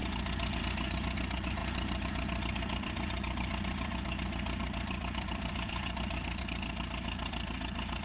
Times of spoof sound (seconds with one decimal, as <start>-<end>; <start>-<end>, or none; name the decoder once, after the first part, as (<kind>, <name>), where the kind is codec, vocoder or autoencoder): 0.0-0.6 (vocoder, BigVGAN v2); 1.6-6.4